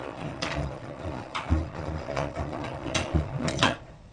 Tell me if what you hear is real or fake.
fake